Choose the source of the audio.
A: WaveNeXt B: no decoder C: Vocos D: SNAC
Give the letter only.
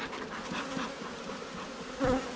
B